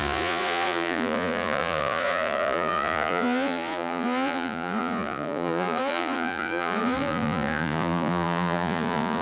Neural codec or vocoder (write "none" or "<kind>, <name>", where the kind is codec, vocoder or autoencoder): vocoder, Vocos